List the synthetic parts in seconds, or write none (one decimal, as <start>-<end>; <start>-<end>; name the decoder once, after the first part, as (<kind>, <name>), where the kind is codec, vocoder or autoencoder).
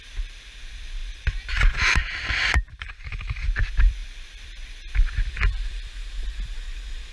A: 0.0-7.1 (vocoder, BigVGAN v2)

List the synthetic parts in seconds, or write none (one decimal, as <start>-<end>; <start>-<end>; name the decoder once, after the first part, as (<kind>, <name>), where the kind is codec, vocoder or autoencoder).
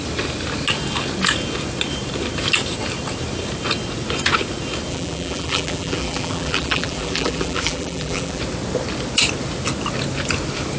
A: 4.9-8.4 (vocoder, BigVGAN v2)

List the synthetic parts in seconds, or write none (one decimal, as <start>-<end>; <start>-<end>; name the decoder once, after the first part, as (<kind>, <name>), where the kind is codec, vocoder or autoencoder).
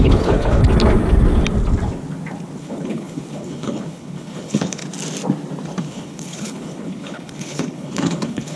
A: 0.0-0.6 (codec, HILCodec); 2.6-4.8; 5.8-8.6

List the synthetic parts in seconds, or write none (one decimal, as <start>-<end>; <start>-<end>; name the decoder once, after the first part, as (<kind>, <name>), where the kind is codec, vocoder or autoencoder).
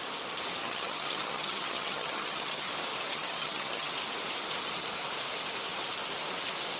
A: 0.6-2.7 (vocoder, HiFi-GAN); 3.1-3.9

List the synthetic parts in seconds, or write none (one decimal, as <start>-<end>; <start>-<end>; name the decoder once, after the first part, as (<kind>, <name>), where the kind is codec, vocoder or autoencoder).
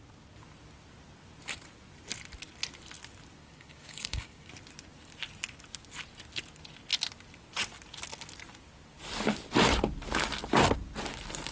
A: 3.4-4.5 (codec, DAC)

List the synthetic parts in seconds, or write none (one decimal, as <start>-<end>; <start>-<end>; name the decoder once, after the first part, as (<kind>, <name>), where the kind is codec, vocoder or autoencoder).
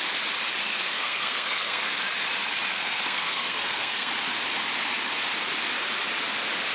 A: 0.7-2.0 (codec, SNAC); 2.7-4.1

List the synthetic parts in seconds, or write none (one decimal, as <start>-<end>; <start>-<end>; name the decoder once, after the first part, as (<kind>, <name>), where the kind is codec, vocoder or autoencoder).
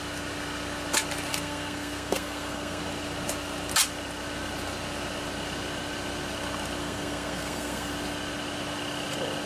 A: 1.3-2.8 (codec, SNAC); 6.8-7.9